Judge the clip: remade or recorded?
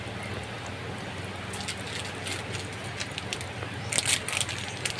recorded